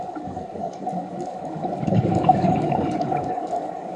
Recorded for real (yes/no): no